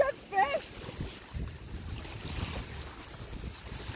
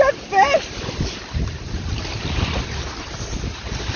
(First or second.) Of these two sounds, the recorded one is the first